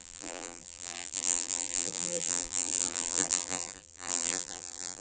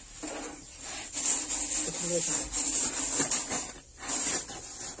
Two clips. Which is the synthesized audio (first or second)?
first